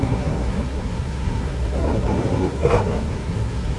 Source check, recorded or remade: remade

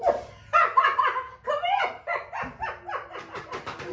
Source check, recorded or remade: recorded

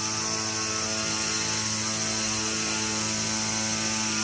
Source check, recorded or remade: recorded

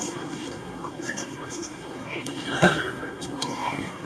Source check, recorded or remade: remade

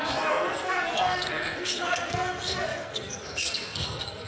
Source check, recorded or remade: remade